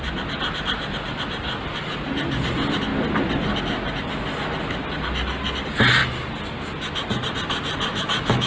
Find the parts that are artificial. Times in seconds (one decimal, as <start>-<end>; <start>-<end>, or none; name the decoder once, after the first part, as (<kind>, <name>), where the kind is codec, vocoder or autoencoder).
7.9-8.5 (autoencoder, DAC-VAE)